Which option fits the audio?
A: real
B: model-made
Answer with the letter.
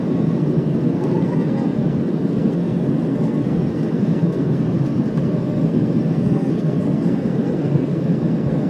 B